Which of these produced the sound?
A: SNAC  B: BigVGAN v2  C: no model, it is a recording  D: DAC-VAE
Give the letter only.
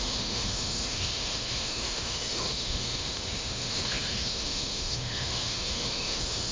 D